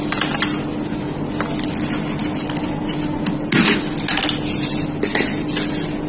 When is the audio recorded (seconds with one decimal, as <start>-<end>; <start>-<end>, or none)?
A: 0.0-6.1